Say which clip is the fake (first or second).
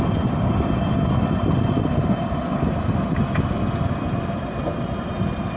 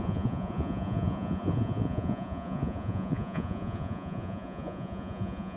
second